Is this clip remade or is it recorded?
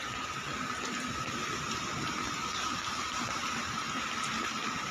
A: recorded